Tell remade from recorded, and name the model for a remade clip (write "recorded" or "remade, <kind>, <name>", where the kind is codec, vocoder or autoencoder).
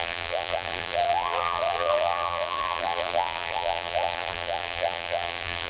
remade, vocoder, BigVGAN v2